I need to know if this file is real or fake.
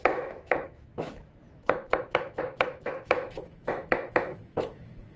fake